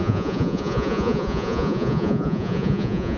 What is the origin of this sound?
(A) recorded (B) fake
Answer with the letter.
B